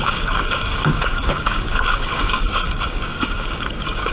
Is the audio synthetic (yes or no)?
yes